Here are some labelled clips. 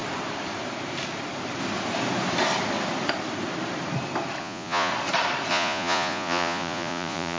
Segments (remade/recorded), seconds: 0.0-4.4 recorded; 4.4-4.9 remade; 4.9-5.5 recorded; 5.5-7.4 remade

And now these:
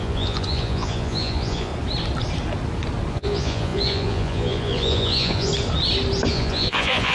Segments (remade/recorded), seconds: 0.0-1.7 remade; 1.7-3.1 recorded; 3.1-5.5 remade; 5.5-6.3 recorded; 6.3-7.1 remade

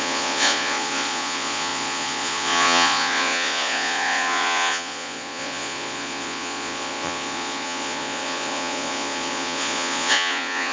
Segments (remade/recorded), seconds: 0.0-10.7 remade

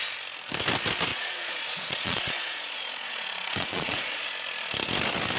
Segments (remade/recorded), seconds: 0.0-1.1 recorded; 1.1-4.3 remade; 4.3-5.4 recorded